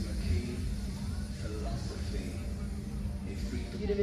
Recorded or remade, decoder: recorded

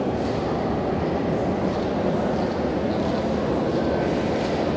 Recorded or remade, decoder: recorded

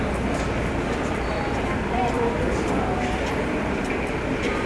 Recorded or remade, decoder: recorded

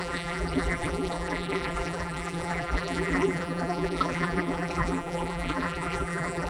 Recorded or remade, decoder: remade, vocoder, BigVGAN v2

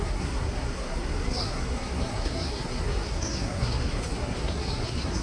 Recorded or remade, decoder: remade, codec, SNAC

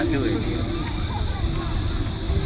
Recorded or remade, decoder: recorded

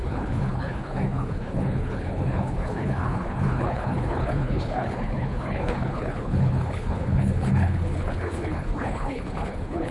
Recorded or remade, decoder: remade, codec, HILCodec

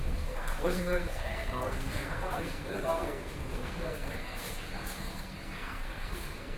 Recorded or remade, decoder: remade, codec, SNAC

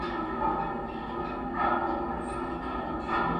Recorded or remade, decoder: recorded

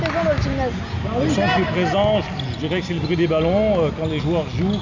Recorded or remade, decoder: recorded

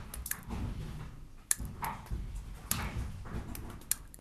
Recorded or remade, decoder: recorded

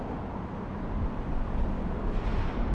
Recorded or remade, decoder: recorded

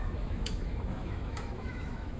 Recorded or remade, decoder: remade, autoencoder, DAC-VAE